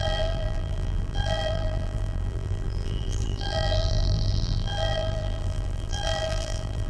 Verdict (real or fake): fake